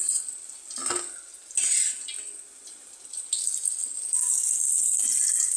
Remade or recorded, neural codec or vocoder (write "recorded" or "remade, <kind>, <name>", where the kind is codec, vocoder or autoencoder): recorded